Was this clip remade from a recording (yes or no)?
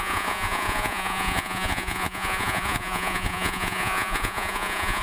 yes